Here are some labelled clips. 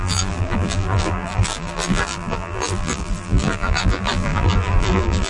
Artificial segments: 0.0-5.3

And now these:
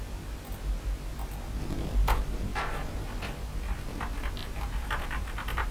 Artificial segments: 4.4-5.7

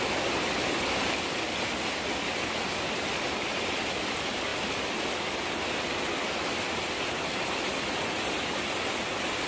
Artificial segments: none

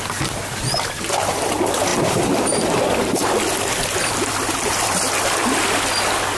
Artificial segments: 1.9-5.6

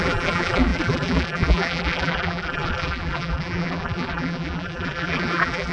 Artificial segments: 0.0-5.7